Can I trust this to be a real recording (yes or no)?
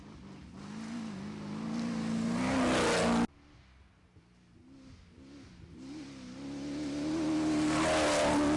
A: yes